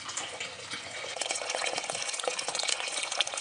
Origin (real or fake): fake